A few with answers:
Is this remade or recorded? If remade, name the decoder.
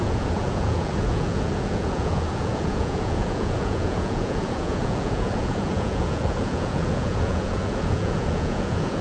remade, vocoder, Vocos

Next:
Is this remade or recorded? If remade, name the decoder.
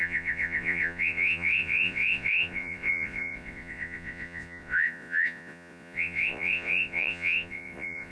remade, vocoder, Vocos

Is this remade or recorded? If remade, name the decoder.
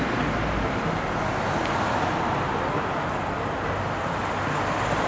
recorded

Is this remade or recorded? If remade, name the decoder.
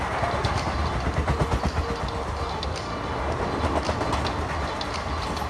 recorded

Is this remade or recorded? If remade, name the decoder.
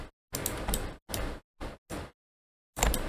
recorded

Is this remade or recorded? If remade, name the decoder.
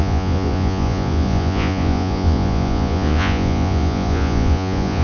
remade, vocoder, Vocos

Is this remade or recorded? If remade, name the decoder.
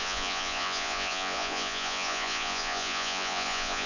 remade, vocoder, Vocos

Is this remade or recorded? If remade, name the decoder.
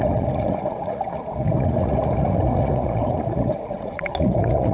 remade, vocoder, Vocos